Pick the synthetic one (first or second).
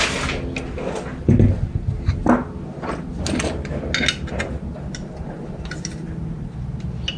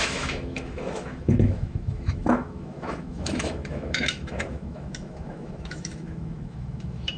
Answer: second